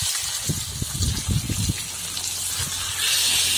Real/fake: real